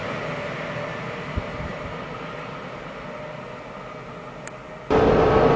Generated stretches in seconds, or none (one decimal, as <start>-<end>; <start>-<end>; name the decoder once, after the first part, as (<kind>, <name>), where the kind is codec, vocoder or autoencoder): none